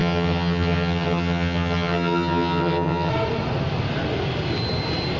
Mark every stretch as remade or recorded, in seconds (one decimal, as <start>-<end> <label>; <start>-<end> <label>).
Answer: 0.0-3.1 remade; 3.1-5.2 recorded